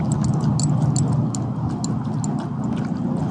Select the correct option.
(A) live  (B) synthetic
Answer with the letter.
A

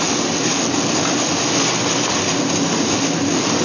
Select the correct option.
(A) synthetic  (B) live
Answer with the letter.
B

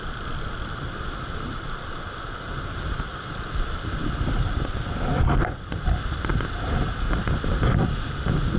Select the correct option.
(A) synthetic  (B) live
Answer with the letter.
B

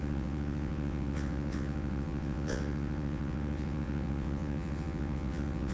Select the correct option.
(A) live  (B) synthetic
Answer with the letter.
B